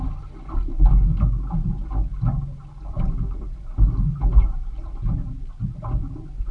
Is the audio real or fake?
real